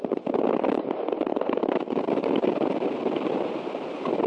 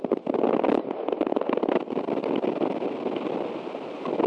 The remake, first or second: first